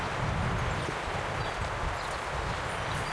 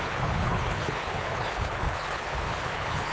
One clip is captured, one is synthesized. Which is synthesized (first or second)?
second